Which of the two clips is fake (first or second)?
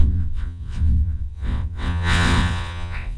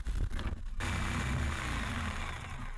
first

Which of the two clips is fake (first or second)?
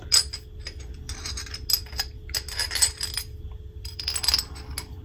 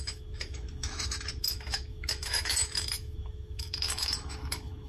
second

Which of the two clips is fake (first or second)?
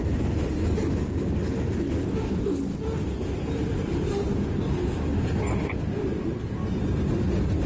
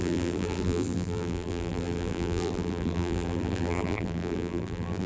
second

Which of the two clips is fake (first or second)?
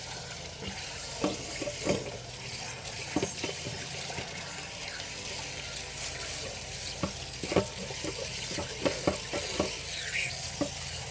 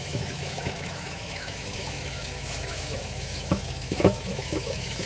second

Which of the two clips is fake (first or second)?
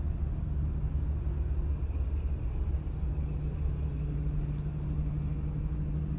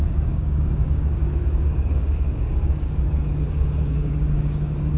second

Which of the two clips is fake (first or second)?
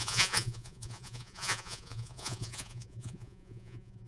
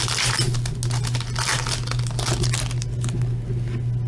first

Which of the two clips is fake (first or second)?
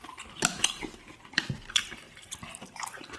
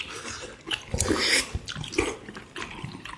first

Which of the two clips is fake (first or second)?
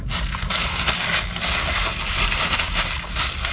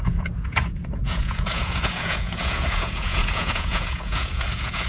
second